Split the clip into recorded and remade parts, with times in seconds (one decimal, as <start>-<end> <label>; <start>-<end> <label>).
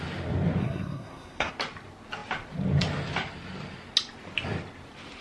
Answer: 0.0-0.6 recorded; 0.6-1.5 remade; 1.5-5.2 recorded